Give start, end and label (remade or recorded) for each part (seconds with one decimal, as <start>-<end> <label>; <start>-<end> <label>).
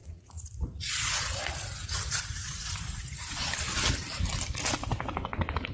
0.0-3.4 remade; 3.4-5.7 recorded